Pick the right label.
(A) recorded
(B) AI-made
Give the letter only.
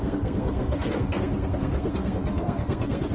B